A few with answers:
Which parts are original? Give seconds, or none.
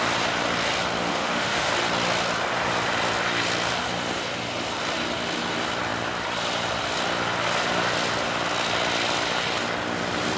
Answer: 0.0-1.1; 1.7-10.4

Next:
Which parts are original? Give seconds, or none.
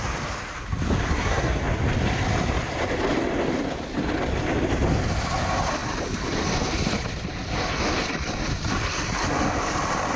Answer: 0.0-1.1; 1.6-10.2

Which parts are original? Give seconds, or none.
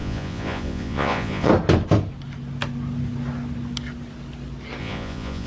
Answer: 1.5-4.8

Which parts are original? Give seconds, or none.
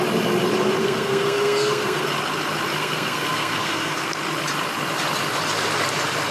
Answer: 0.0-0.8; 2.0-2.8; 4.1-6.3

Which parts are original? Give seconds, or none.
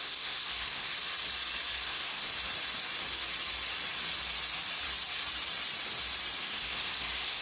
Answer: 0.9-1.8; 2.3-6.4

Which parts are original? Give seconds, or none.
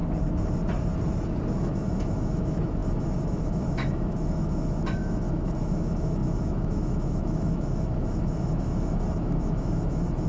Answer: 0.0-1.5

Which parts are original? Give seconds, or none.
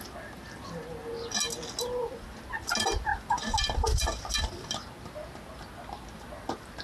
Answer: 0.0-6.8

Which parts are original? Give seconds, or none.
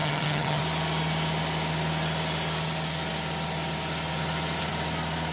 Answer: 0.6-5.3